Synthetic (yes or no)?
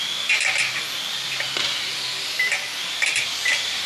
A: yes